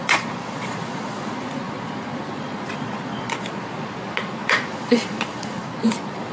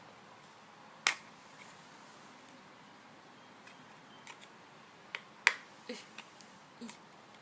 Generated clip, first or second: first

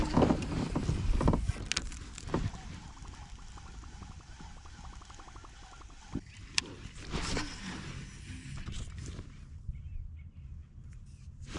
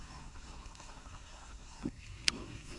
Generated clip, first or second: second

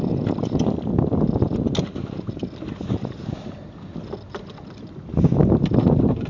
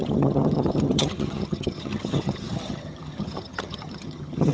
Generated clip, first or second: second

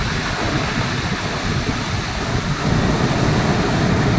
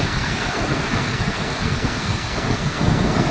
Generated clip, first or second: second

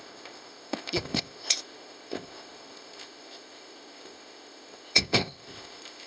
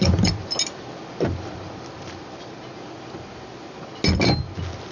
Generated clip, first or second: first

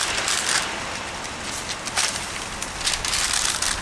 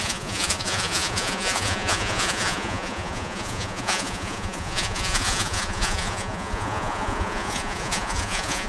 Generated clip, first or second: second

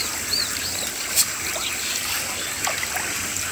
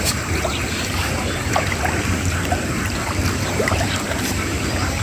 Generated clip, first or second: second